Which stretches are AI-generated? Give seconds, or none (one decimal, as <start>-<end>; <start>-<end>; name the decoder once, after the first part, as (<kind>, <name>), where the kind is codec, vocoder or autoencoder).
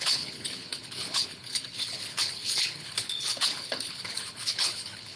0.0-5.2 (codec, HILCodec)